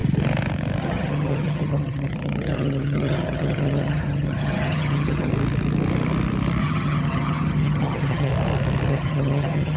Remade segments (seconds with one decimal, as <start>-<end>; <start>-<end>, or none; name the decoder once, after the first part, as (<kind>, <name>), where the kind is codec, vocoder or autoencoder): 0.8-5.3 (vocoder, HiFi-GAN); 6.6-8.3; 8.9-9.8